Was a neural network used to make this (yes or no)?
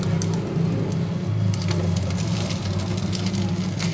no